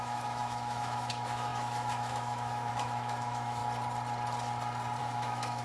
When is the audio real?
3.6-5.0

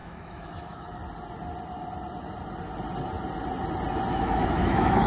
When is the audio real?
1.0-4.1

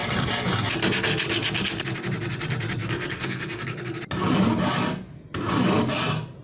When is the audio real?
0.0-2.8; 4.0-6.4

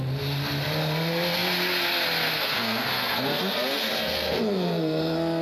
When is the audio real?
0.0-2.3

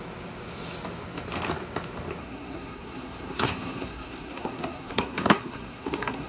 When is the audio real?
0.0-2.2